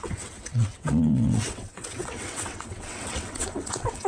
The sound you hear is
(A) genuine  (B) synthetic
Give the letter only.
B